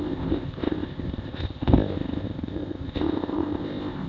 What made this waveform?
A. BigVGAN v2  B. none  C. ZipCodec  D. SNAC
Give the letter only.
C